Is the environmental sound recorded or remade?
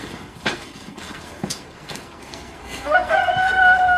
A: remade